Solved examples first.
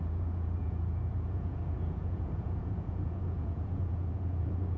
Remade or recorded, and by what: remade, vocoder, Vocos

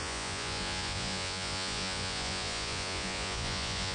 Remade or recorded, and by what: remade, vocoder, Vocos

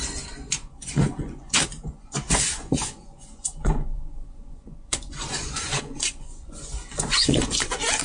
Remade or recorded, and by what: remade, vocoder, Vocos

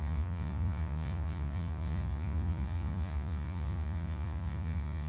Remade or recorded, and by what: remade, vocoder, Vocos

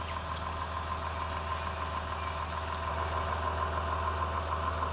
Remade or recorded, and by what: recorded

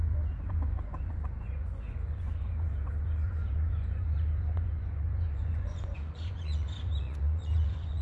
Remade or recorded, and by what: remade, vocoder, Vocos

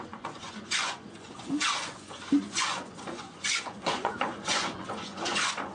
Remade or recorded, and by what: remade, vocoder, Vocos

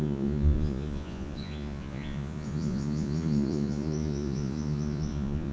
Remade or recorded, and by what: remade, vocoder, Vocos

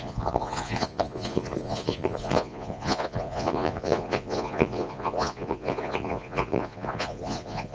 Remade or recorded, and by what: remade, vocoder, Vocos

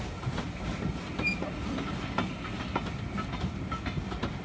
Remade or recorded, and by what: recorded